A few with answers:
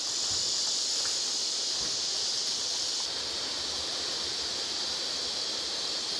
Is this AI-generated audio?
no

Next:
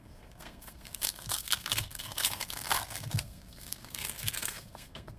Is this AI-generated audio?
yes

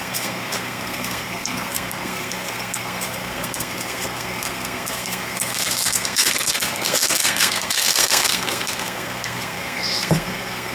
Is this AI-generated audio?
yes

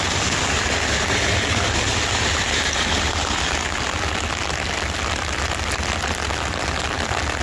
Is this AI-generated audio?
no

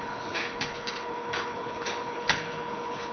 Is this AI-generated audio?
yes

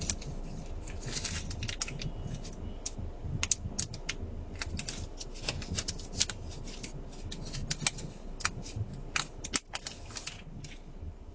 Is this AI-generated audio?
no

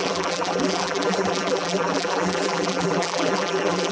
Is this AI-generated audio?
yes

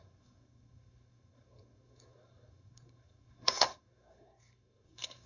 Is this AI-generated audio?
yes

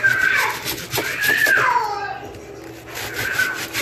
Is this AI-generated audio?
no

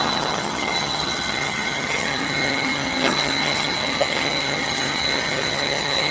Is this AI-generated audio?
yes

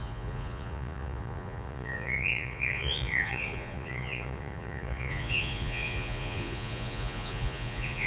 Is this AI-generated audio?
yes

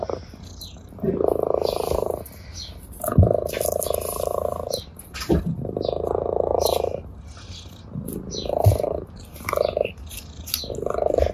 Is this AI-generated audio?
no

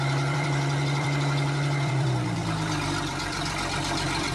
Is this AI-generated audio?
yes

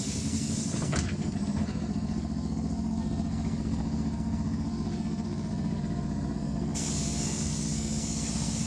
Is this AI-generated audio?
yes